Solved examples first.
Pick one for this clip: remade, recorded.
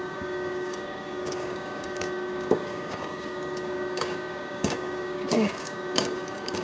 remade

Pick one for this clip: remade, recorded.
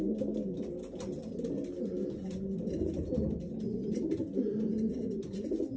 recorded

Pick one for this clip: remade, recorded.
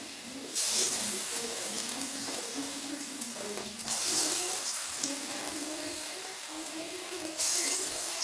remade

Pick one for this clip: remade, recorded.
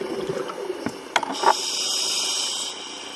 recorded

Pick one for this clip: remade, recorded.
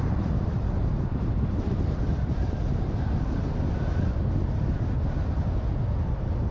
recorded